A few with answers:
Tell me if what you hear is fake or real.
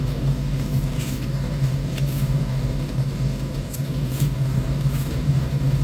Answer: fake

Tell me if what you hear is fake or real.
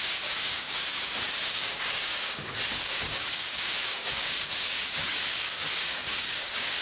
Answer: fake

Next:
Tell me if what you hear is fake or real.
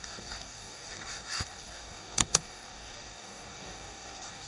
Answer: fake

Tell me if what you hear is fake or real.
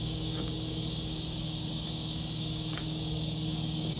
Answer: fake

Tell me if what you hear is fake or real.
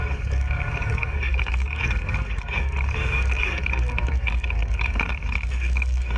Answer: fake